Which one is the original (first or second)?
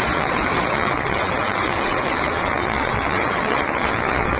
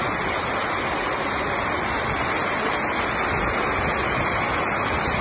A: second